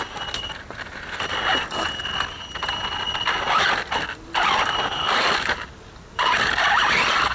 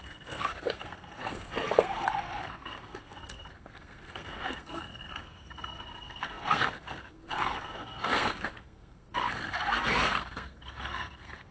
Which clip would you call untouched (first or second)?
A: first